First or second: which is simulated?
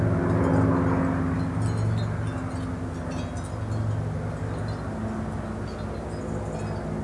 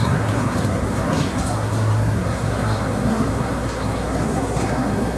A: second